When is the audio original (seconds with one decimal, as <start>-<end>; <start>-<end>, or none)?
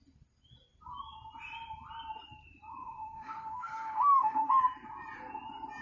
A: 0.0-2.8; 4.5-5.8